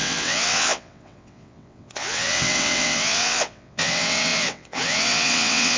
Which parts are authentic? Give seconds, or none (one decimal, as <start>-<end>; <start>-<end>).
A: none